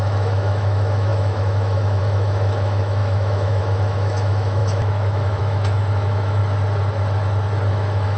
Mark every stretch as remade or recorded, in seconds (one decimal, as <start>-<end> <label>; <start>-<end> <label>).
0.0-6.4 remade; 6.4-7.7 recorded; 7.7-8.2 remade